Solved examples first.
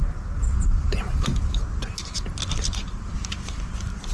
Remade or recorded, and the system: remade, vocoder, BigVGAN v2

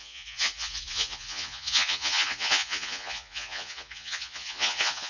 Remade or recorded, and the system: remade, vocoder, Vocos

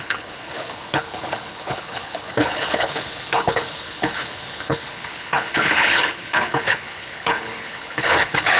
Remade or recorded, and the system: remade, codec, HILCodec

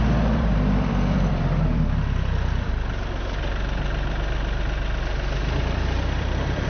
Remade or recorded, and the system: remade, vocoder, BigVGAN v2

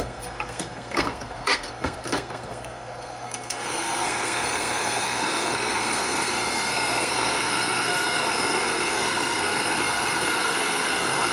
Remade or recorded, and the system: remade, codec, SNAC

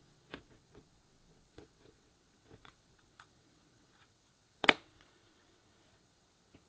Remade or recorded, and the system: remade, vocoder, WaveNeXt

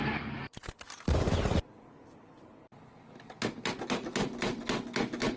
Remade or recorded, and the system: recorded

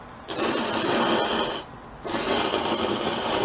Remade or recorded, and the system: recorded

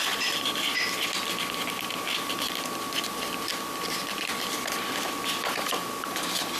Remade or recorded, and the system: remade, vocoder, BigVGAN v2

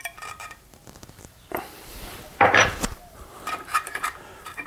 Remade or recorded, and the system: remade, vocoder, BigVGAN v2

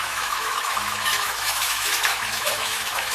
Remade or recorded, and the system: remade, autoencoder, DAC-VAE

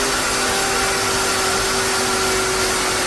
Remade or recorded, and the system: recorded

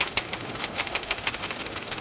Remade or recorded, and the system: remade, autoencoder, DAC-VAE